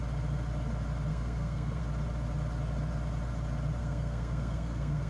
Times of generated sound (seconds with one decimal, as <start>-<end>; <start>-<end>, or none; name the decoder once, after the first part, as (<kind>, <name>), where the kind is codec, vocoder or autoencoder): 1.1-1.8 (codec, SNAC); 3.8-5.1